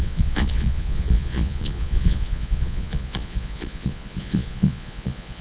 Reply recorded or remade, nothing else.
remade